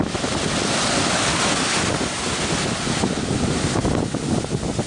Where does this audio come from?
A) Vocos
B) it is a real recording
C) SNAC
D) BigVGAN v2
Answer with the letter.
B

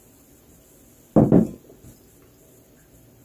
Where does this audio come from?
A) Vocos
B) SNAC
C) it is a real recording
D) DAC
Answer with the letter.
C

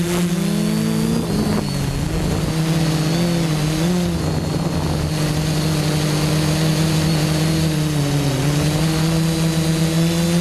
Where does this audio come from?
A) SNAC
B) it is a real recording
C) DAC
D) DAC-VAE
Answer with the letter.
B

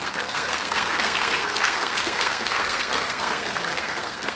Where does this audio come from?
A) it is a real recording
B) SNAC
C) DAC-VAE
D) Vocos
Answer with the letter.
B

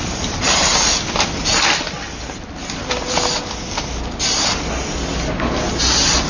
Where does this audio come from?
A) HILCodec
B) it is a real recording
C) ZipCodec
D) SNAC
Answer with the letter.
B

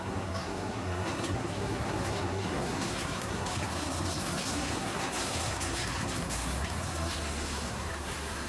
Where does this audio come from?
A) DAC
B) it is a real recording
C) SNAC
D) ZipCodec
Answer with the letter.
C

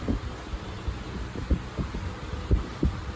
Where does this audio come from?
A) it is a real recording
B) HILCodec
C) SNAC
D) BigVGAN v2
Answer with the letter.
A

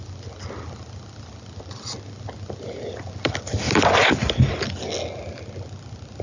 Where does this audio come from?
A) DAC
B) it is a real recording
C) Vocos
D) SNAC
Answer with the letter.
B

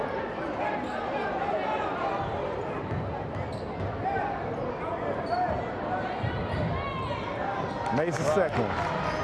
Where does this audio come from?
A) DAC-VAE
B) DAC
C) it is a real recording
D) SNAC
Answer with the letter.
C